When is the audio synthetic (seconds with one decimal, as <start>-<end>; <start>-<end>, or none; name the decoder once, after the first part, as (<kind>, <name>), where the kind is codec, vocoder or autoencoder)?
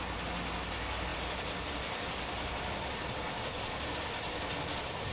none